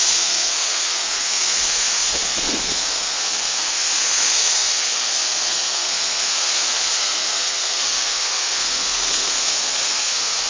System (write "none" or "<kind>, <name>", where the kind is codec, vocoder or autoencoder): codec, SNAC